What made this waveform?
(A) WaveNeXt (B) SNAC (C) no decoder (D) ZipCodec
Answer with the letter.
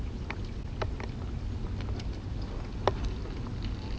C